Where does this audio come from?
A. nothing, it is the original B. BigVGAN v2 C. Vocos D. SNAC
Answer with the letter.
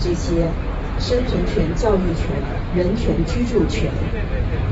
B